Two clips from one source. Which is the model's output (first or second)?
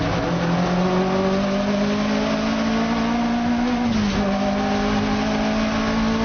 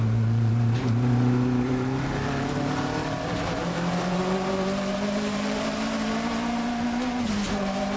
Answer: second